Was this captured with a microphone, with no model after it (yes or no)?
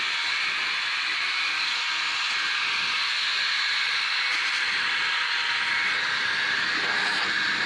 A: yes